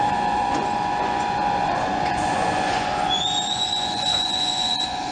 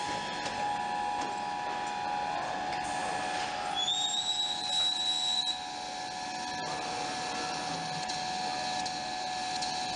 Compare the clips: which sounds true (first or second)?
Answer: second